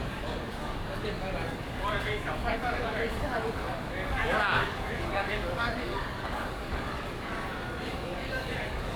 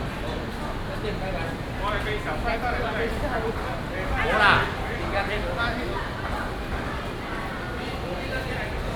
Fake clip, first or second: first